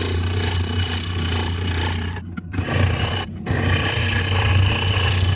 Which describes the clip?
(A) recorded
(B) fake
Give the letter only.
A